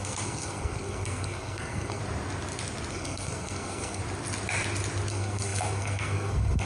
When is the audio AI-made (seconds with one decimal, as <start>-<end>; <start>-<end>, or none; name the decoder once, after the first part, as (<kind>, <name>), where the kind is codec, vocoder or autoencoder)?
0.0-2.0 (codec, SNAC); 2.9-4.0; 5.1-6.7